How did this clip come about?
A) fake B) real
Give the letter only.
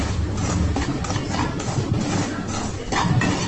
B